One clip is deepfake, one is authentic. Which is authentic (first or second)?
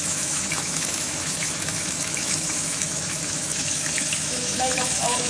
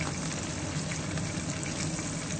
second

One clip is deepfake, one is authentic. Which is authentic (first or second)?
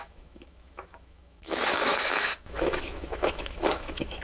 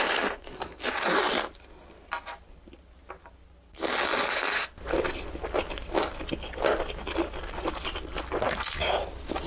second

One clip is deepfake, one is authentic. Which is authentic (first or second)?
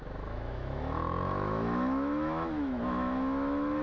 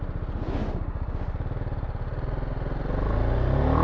second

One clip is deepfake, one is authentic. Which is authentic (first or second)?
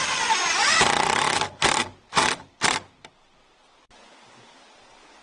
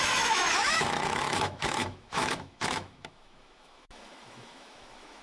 first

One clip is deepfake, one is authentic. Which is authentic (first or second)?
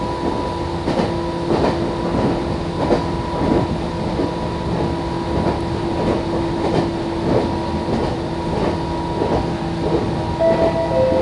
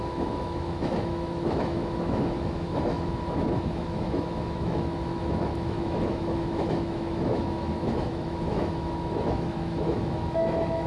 first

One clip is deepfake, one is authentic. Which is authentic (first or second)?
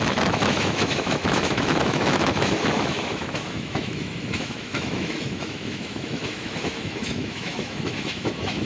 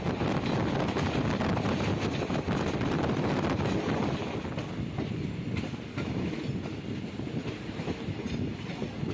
second